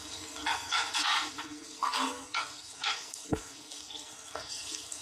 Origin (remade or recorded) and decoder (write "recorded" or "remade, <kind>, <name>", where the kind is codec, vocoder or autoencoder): remade, codec, SNAC